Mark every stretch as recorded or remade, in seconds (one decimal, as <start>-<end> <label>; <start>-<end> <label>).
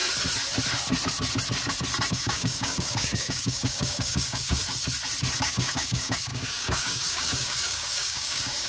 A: 0.0-2.1 recorded; 2.1-4.6 remade; 4.6-5.4 recorded; 5.4-8.7 remade